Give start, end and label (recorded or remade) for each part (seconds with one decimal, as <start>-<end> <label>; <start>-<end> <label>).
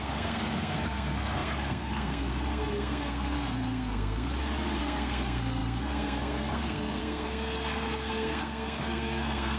0.0-4.3 remade; 4.3-4.8 recorded; 4.8-9.6 remade